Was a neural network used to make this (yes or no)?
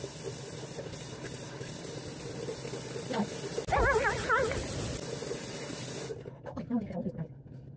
no